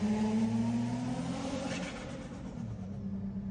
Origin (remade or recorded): recorded